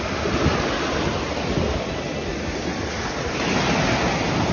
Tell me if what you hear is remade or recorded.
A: recorded